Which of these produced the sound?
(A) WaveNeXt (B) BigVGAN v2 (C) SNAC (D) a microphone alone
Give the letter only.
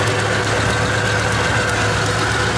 D